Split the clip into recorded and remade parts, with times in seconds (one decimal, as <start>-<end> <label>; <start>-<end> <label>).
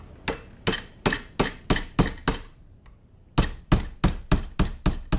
0.0-5.2 recorded